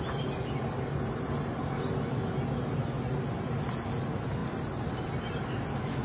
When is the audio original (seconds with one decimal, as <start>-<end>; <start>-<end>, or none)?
0.0-6.0